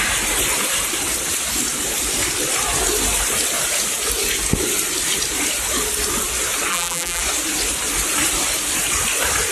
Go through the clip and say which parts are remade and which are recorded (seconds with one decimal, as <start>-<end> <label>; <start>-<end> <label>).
0.0-6.7 recorded; 6.7-7.2 remade; 7.2-9.5 recorded